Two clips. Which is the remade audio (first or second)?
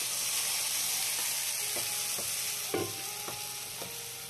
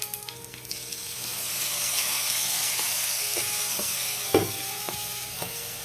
second